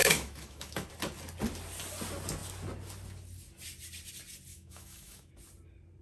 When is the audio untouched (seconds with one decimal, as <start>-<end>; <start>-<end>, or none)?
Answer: 0.9-4.5; 5.3-6.0